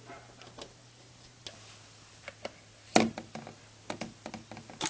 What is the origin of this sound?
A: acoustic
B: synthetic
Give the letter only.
A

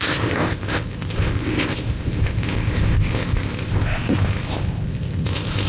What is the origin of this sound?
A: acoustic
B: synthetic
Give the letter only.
B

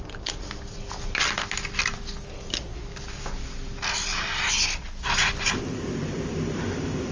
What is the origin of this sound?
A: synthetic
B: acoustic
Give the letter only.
B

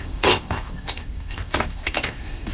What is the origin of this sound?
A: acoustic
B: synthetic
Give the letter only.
B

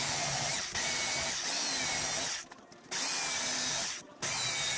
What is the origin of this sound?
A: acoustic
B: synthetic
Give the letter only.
A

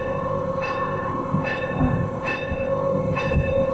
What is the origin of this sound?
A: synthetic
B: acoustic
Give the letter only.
A